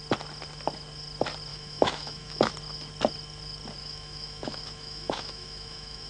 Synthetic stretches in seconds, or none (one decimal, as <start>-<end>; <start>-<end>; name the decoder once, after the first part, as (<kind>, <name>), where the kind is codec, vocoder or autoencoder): 1.5-2.5 (autoencoder, DAC-VAE); 3.8-6.1